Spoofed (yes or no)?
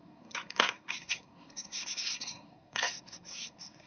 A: yes